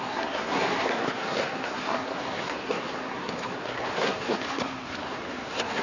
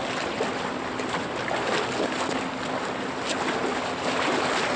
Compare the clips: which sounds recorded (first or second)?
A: second